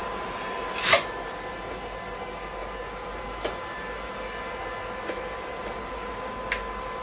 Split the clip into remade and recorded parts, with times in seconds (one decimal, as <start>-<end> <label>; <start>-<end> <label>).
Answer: 0.0-7.0 recorded